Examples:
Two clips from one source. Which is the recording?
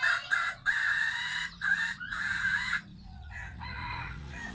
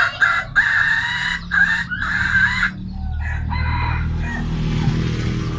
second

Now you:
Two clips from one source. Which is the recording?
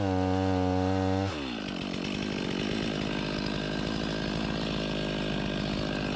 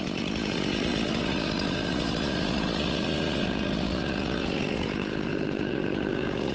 first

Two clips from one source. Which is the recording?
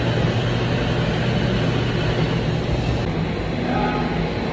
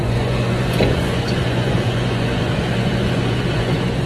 first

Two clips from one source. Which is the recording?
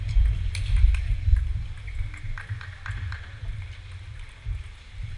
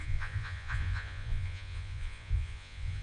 first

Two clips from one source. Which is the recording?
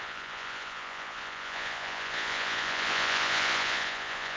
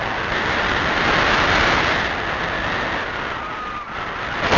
second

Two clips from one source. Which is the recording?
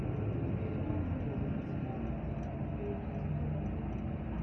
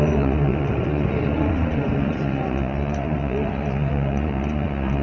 first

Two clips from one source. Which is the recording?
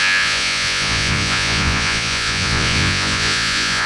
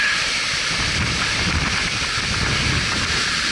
second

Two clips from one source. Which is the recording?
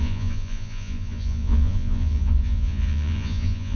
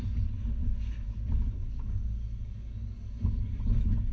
second